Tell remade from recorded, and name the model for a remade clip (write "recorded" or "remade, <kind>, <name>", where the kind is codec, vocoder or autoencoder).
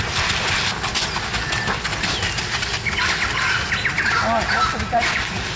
recorded